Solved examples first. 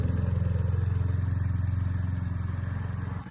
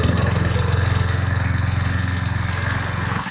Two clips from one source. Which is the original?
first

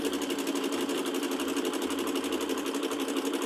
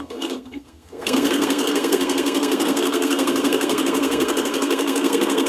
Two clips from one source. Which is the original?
first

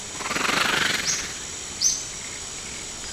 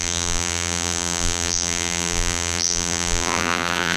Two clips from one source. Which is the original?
first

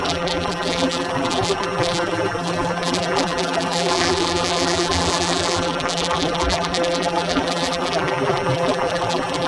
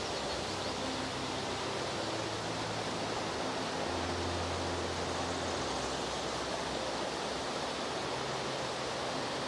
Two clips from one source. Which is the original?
second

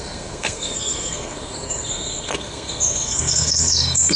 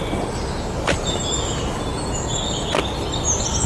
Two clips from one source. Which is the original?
second